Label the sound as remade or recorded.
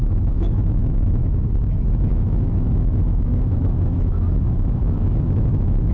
remade